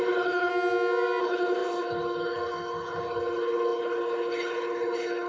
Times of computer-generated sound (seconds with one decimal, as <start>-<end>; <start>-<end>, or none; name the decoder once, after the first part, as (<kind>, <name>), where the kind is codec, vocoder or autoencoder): 0.0-0.5 (codec, HILCodec); 1.2-5.3